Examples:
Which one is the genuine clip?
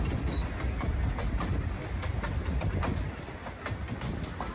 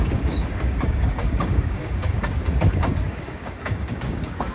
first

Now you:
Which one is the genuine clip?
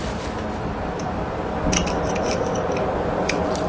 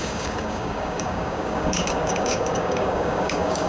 first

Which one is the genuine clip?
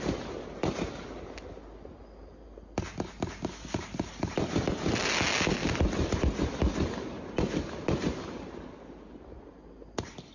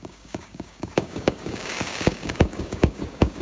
first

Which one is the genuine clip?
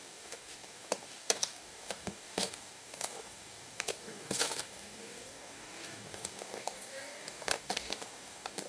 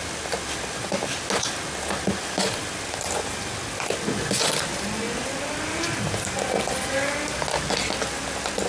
second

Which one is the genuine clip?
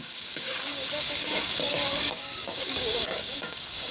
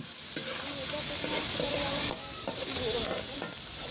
second